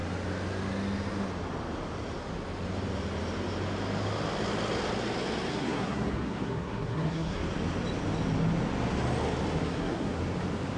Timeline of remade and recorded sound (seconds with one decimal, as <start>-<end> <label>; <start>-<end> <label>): 0.0-5.5 recorded; 5.5-7.4 remade; 7.4-9.6 recorded; 9.6-10.2 remade; 10.2-10.8 recorded